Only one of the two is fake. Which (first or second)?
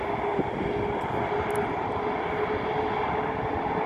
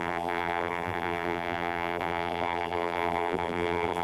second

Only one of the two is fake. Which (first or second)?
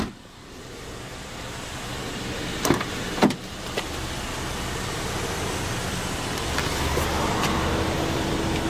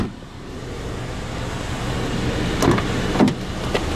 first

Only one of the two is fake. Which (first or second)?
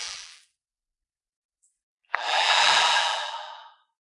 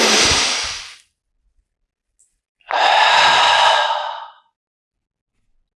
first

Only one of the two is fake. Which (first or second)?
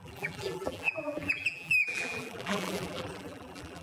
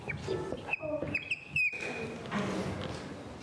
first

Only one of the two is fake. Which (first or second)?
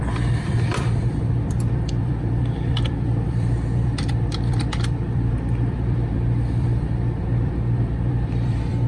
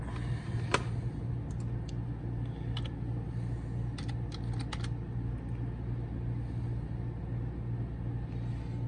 first